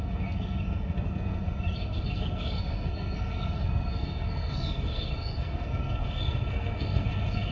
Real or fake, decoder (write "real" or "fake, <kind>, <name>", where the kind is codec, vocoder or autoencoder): fake, codec, SNAC